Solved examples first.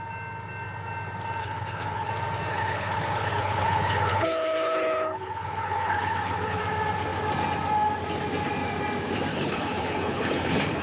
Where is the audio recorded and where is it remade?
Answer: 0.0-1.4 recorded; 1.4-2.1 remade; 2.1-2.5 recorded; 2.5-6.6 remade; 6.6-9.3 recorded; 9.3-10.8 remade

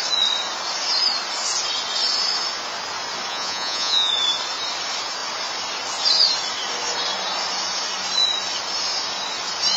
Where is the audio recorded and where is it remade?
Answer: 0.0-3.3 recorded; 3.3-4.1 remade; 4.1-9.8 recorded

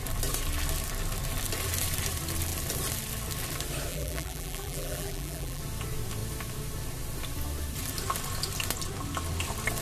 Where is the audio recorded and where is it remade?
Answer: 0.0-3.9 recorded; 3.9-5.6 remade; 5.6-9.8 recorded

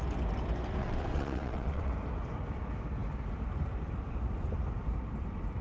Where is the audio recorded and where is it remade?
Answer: 0.0-0.8 recorded; 0.8-1.9 remade; 1.9-5.6 recorded

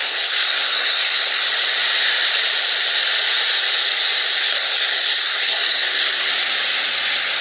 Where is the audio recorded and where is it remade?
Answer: 0.0-1.4 remade; 1.4-4.4 recorded; 4.4-6.3 remade; 6.3-7.4 recorded